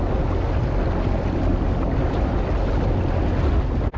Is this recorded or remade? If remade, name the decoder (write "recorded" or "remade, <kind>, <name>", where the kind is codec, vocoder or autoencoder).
recorded